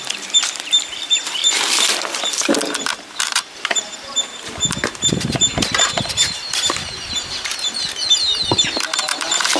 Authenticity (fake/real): fake